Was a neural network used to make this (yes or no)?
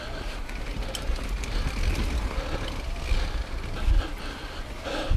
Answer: no